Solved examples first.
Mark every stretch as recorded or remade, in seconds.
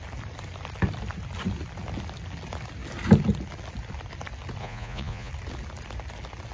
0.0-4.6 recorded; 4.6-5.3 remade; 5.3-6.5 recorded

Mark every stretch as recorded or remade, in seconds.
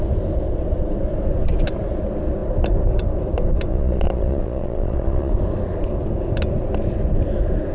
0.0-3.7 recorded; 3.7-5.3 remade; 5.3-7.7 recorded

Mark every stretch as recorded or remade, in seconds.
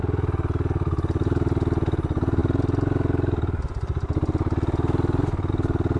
0.0-6.0 recorded